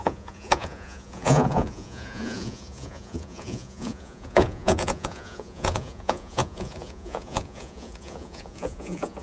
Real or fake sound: fake